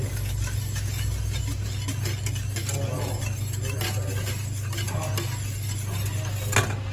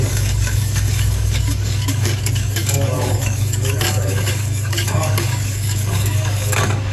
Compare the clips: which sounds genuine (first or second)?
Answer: first